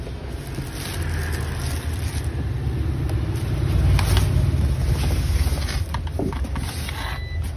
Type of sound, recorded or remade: recorded